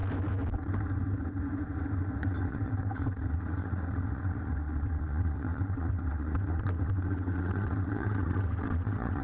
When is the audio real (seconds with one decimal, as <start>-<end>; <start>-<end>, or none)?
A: 0.0-2.2